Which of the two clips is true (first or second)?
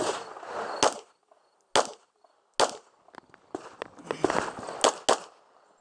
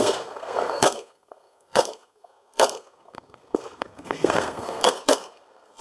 first